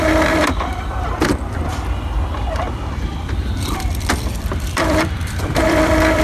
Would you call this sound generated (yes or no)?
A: yes